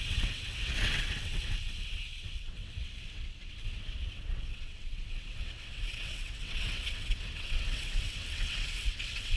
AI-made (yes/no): yes